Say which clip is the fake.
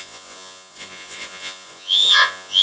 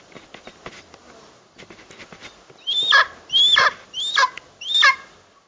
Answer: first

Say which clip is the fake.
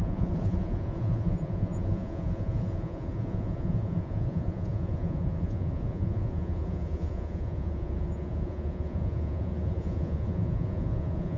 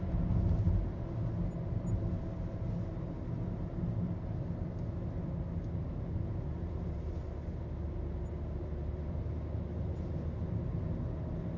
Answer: first